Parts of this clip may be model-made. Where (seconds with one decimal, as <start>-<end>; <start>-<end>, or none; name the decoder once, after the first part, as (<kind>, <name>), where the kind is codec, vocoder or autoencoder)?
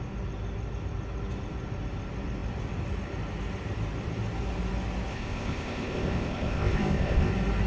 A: 5.1-7.3 (codec, ZipCodec)